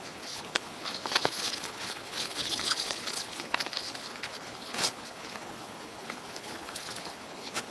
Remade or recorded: remade